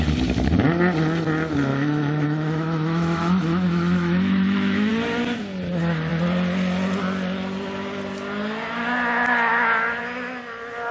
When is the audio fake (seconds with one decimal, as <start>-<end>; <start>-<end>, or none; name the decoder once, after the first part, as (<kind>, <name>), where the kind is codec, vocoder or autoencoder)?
1.7-4.9 (autoencoder, DAC-VAE)